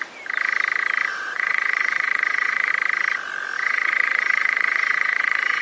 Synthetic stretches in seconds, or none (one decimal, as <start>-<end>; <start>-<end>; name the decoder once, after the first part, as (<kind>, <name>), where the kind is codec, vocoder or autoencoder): 1.1-2.7 (vocoder, WaveNeXt); 3.6-5.6